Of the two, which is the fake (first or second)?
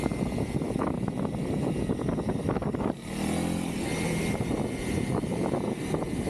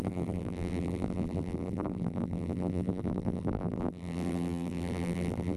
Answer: second